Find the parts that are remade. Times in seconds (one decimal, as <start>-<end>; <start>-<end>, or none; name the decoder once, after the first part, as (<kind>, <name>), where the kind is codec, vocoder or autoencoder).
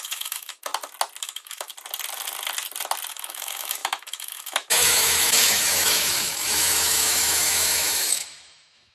0.0-0.7 (autoencoder, DAC-VAE); 1.2-1.7; 3.1-8.9